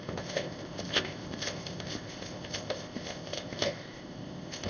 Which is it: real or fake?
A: fake